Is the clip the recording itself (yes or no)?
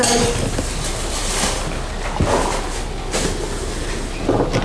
yes